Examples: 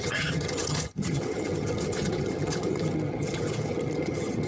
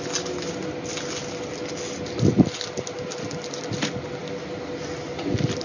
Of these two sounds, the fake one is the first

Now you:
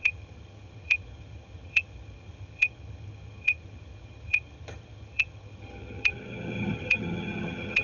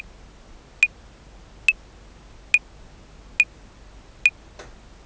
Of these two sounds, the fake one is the first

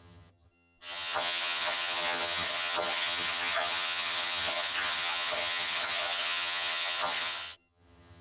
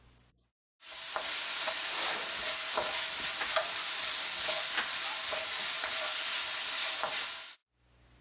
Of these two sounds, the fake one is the first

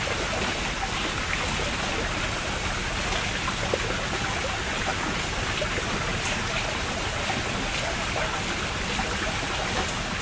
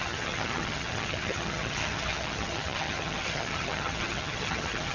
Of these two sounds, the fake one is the second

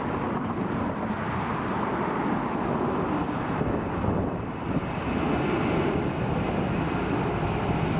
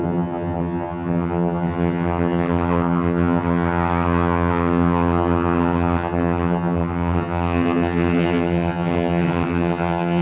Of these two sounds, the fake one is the second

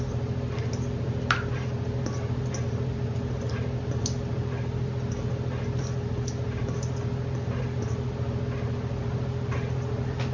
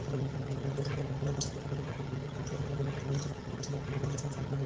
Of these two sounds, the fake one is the second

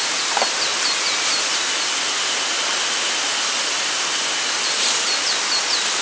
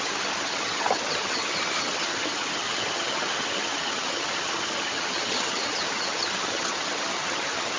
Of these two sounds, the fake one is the second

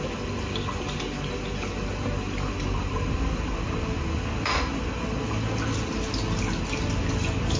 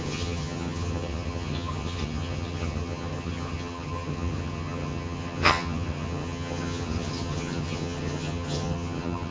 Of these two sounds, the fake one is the second